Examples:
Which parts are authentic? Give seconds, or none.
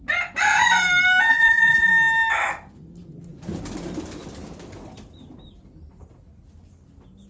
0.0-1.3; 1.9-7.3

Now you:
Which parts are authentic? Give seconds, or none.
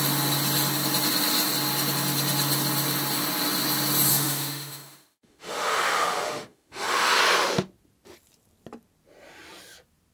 0.0-4.1; 7.2-10.1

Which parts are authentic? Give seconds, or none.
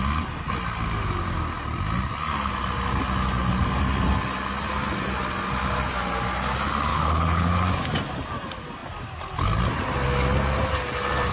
0.0-6.9; 7.5-11.3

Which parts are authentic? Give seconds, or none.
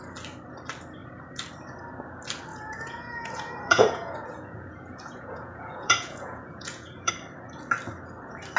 0.0-2.5; 7.1-8.6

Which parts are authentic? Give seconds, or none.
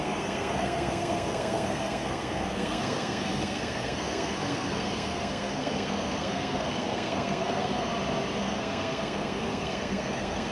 7.9-8.4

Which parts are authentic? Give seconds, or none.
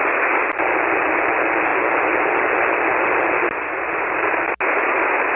0.0-5.4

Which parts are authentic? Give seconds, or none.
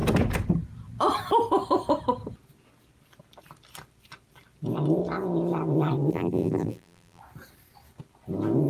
0.0-6.1; 7.2-8.7